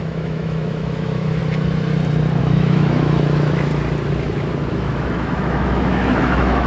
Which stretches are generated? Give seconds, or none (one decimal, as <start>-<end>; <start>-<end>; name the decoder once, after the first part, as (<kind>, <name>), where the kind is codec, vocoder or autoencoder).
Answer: 0.0-1.4 (autoencoder, DAC-VAE); 2.4-3.7; 4.7-6.7